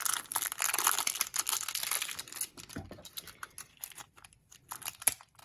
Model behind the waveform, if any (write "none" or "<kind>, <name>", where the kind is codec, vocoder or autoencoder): none